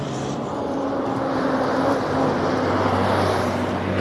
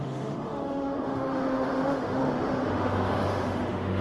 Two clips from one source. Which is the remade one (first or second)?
second